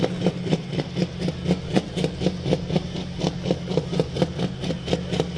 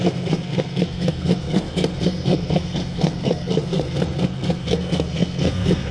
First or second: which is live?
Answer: first